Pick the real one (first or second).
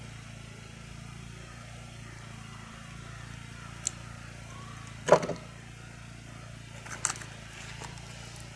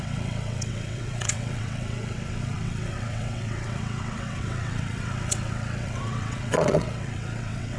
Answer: first